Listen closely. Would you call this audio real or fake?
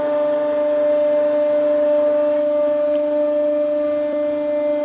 real